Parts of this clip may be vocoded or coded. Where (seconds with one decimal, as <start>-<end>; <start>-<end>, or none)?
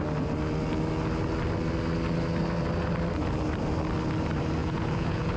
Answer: 4.6-5.4